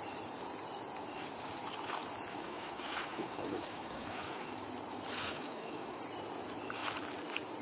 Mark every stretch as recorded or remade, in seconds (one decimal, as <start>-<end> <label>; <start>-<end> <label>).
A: 0.0-2.3 recorded; 2.3-4.5 remade; 4.5-5.2 recorded; 5.2-6.0 remade; 6.0-7.6 recorded